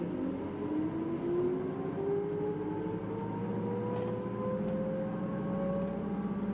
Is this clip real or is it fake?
real